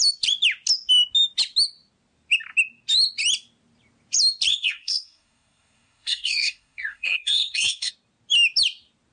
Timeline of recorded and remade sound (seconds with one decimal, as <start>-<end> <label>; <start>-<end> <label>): 0.0-4.5 recorded; 4.5-7.9 remade; 7.9-9.1 recorded